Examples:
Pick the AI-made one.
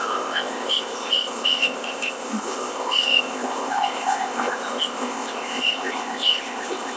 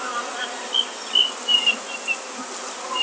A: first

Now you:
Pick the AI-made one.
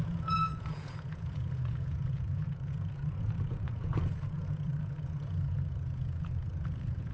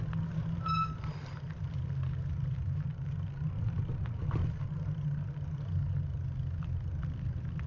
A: first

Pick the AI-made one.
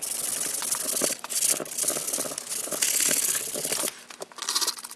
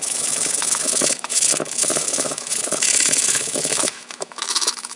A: second